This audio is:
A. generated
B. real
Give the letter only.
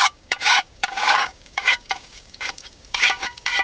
A